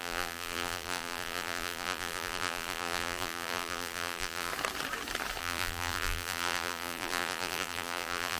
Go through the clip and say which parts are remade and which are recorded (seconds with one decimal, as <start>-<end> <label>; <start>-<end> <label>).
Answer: 0.0-4.5 remade; 4.5-5.4 recorded; 5.4-8.4 remade